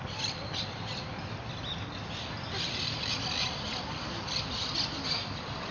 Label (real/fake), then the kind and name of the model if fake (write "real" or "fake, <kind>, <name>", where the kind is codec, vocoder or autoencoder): real